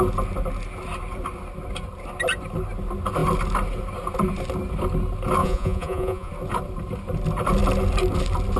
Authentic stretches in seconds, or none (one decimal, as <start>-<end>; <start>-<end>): 0.0-5.4; 6.3-8.6